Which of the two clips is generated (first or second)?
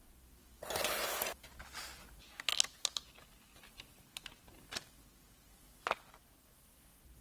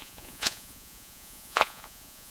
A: second